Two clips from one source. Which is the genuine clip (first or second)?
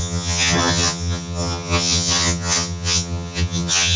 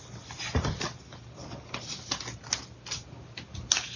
second